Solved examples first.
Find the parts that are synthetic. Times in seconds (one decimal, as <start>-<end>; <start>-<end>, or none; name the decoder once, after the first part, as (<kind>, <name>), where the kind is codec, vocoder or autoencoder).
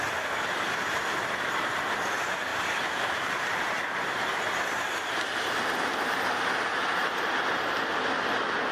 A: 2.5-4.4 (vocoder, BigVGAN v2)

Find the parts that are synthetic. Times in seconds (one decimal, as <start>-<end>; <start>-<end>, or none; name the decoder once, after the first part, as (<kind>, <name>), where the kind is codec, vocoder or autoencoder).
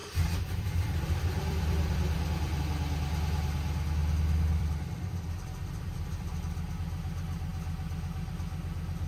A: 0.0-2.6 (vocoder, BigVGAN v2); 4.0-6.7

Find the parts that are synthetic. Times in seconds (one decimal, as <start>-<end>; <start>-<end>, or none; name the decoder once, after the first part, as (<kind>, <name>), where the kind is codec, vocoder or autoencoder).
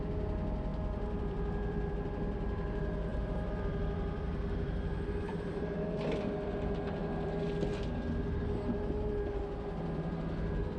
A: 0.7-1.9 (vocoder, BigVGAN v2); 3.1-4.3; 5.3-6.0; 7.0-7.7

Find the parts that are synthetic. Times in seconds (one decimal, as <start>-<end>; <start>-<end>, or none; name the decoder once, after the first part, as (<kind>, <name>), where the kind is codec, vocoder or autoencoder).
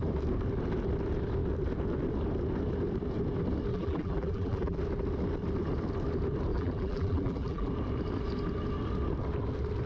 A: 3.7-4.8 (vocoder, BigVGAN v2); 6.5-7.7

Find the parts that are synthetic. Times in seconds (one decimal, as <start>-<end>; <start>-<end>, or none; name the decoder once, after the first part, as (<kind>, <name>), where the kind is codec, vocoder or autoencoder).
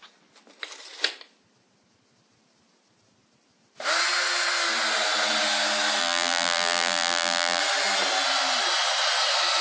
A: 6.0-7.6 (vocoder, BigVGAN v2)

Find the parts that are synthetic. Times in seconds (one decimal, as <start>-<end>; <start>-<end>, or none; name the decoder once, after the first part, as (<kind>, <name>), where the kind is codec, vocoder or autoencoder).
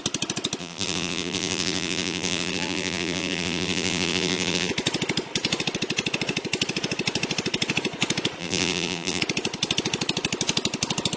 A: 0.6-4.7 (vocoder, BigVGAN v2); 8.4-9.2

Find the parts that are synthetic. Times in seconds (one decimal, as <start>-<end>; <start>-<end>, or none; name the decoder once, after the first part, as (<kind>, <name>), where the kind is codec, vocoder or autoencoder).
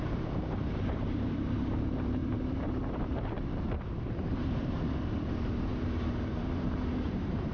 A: 0.0-7.5 (vocoder, BigVGAN v2)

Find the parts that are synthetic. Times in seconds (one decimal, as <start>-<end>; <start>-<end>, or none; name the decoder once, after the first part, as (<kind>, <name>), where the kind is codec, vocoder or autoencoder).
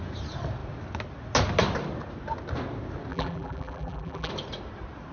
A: 3.1-4.3 (vocoder, BigVGAN v2)